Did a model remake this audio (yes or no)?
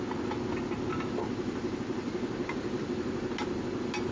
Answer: no